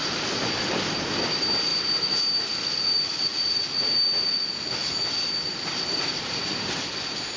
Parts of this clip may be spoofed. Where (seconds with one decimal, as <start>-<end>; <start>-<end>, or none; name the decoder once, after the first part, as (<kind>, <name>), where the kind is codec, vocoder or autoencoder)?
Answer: 0.0-0.9 (vocoder, BigVGAN v2); 5.5-6.7